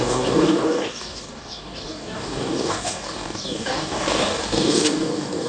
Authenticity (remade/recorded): remade